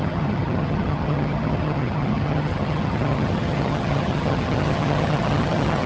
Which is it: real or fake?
fake